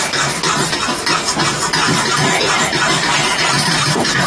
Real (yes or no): no